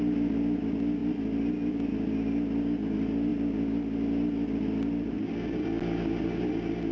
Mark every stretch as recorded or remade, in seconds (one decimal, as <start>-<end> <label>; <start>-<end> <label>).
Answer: 0.0-6.9 recorded